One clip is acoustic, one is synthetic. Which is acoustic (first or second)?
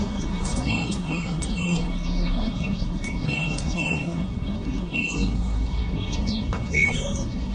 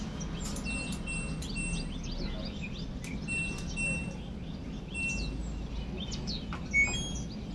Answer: second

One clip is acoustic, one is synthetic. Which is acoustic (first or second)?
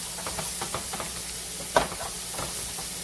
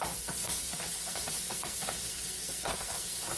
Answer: first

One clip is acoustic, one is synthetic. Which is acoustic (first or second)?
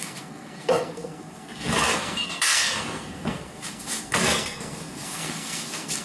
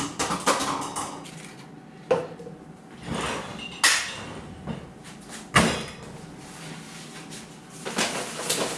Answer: second